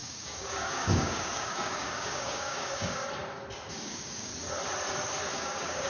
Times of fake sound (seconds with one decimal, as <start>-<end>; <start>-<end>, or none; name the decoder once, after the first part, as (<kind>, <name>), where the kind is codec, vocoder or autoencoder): 0.0-3.0 (codec, DAC); 3.7-4.3; 5.3-5.9